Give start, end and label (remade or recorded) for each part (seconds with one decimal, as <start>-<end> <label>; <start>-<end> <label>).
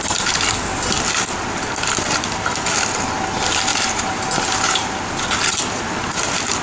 0.0-3.7 recorded; 3.7-4.9 remade; 4.9-6.6 recorded